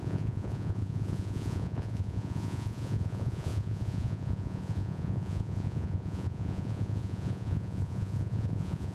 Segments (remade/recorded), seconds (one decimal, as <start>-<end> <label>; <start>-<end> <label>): 0.0-8.9 remade